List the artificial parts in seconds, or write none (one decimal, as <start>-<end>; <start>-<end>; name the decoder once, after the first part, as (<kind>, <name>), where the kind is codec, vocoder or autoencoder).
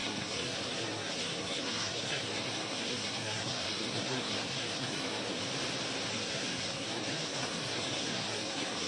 0.0-5.4 (codec, SNAC); 6.1-8.9